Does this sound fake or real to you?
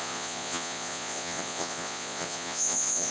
fake